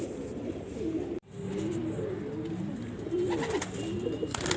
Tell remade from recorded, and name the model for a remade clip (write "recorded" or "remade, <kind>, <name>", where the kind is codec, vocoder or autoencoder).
recorded